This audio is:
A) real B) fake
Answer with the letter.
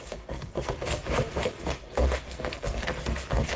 B